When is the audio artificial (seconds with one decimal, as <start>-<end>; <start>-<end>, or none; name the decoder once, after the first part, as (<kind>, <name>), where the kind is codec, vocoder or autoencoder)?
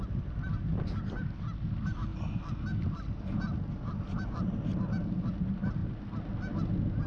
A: none